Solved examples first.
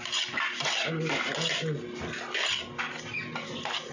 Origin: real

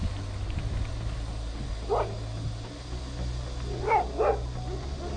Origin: real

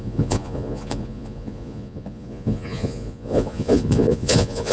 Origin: fake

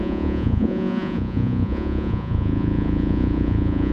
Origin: fake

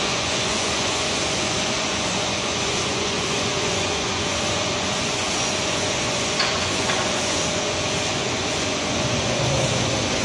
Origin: fake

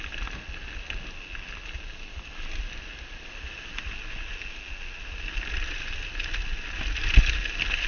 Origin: real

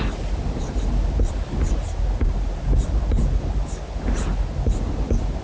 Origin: real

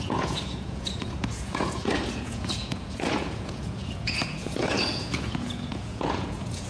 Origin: fake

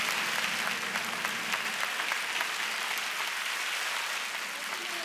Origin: real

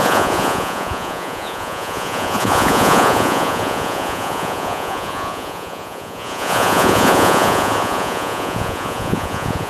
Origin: fake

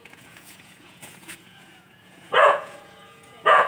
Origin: fake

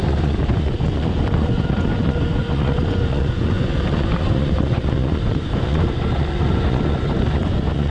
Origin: fake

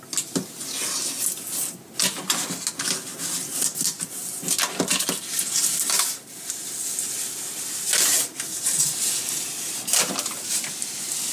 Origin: real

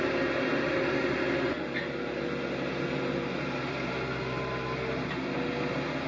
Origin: real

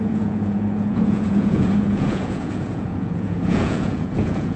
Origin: fake